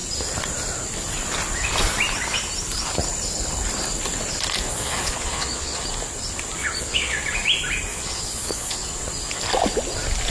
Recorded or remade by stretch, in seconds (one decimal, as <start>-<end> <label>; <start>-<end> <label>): 0.0-4.7 recorded; 4.7-5.8 remade; 5.8-6.6 recorded; 6.6-7.2 remade; 7.2-7.9 recorded; 7.9-8.8 remade; 8.8-10.3 recorded